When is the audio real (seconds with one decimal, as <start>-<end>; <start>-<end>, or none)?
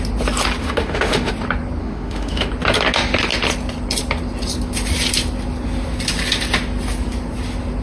0.0-0.6; 1.3-1.8; 2.5-7.8